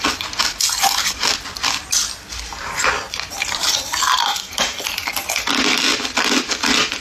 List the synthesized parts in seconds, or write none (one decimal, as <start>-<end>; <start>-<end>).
2.5-5.1